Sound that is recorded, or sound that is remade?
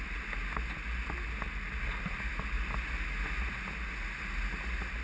recorded